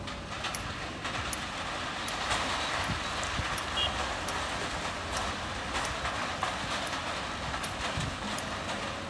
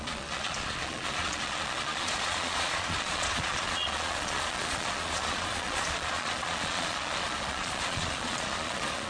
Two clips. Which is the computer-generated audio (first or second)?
second